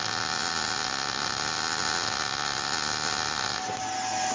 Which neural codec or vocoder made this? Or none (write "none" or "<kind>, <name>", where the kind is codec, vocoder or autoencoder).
none